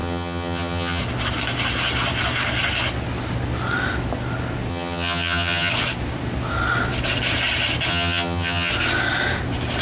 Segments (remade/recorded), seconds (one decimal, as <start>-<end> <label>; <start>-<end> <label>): 0.0-1.0 remade; 1.0-4.7 recorded; 4.7-5.7 remade; 5.7-7.9 recorded; 7.9-8.7 remade; 8.7-9.8 recorded